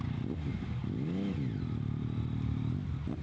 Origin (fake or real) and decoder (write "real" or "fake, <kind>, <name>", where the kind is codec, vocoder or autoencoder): real